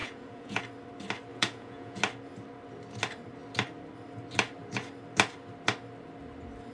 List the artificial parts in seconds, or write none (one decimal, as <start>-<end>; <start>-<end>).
0.0-0.6; 1.3-2.0